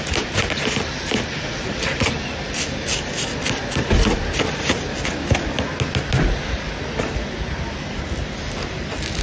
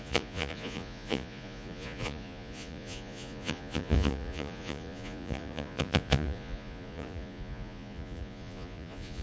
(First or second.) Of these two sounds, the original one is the first